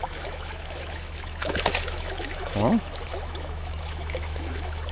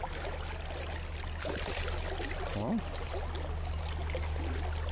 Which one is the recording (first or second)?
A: second